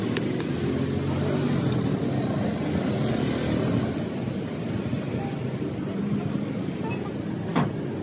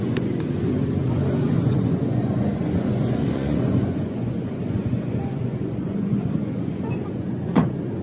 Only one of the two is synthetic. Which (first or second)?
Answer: second